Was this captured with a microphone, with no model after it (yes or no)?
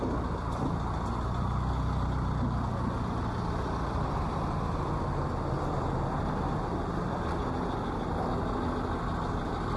yes